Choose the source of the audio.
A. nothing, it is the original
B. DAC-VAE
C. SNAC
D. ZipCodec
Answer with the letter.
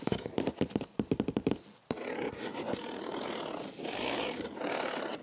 A